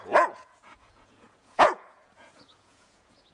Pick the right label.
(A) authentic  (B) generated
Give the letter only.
B